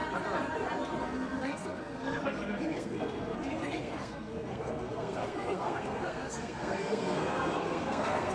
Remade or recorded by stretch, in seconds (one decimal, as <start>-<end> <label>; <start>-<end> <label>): 0.0-1.0 recorded; 1.0-8.3 remade